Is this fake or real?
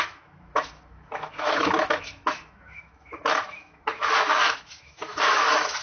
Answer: fake